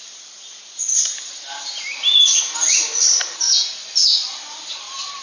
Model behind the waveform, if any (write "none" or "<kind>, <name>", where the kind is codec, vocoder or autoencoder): none